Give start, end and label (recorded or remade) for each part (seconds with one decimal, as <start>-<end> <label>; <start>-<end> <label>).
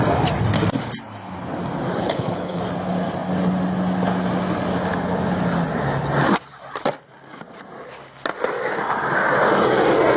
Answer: 0.0-2.0 recorded; 2.0-2.6 remade; 2.6-10.2 recorded